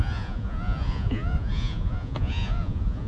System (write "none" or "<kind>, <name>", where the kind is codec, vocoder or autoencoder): vocoder, Vocos